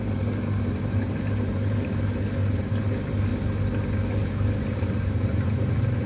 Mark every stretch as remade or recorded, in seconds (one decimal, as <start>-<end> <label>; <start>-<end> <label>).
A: 0.0-3.3 remade; 3.3-4.8 recorded; 4.8-6.1 remade